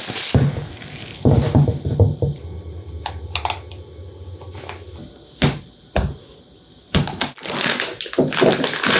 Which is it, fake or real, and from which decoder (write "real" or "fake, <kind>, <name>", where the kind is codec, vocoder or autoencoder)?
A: real